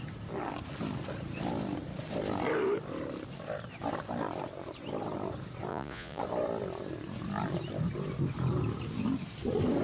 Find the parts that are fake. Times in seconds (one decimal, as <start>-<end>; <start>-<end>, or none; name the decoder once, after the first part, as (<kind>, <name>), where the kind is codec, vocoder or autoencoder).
5.7-6.2 (vocoder, Vocos)